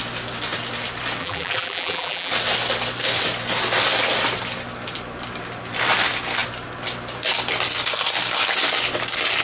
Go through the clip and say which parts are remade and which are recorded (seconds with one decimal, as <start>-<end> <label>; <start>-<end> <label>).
0.0-1.2 recorded; 1.2-2.3 remade; 2.3-9.4 recorded